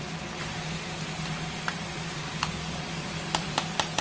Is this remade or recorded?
recorded